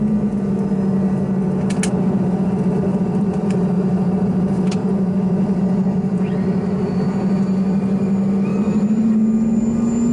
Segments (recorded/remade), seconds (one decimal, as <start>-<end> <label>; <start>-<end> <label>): 0.0-2.9 recorded; 2.9-4.3 remade; 4.3-4.8 recorded; 4.8-5.6 remade; 5.6-8.5 recorded; 8.5-9.1 remade; 9.1-10.1 recorded